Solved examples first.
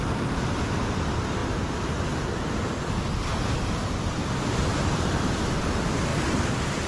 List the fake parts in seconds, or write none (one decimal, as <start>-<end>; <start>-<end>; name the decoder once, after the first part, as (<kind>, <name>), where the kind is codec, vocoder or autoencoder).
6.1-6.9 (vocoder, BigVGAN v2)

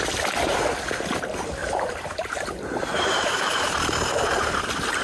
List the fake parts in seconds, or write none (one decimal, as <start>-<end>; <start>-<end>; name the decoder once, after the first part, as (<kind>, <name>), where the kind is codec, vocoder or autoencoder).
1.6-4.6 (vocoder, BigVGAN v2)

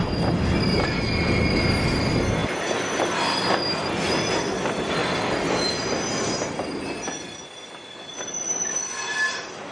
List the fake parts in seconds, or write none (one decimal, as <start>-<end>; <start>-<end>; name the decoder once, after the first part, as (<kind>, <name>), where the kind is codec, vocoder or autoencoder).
none

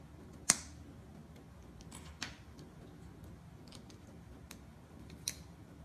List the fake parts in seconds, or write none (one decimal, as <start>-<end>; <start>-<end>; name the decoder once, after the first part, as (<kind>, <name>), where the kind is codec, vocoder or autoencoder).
none